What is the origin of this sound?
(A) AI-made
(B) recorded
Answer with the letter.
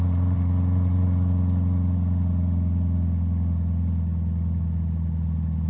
B